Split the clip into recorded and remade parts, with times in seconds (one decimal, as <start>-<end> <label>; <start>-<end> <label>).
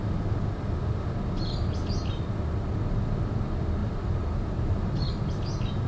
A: 0.0-3.8 recorded; 3.8-5.1 remade; 5.1-5.9 recorded